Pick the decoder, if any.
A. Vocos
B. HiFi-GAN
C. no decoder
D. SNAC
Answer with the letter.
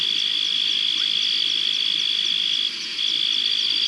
C